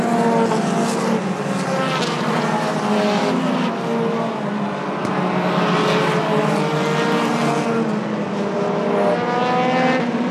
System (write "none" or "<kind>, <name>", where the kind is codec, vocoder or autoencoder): none